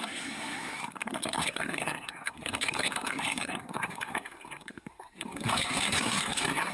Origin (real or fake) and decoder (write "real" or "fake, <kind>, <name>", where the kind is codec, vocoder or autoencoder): fake, codec, SNAC